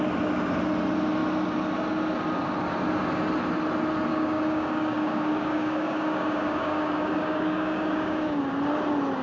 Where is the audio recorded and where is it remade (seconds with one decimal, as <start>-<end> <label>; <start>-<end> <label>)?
0.0-4.1 recorded; 4.1-8.4 remade; 8.4-9.2 recorded